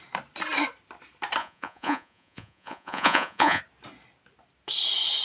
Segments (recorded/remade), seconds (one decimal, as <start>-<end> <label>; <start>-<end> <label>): 0.0-1.4 recorded; 1.4-3.6 remade; 3.6-5.2 recorded